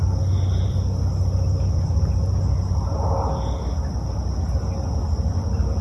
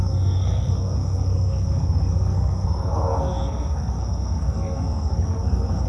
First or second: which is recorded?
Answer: first